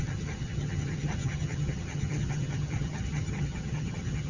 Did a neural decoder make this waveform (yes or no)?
yes